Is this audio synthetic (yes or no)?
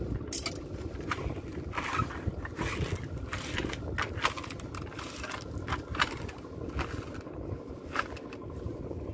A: no